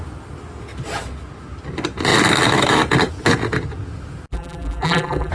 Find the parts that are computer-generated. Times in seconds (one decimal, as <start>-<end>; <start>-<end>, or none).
4.3-5.3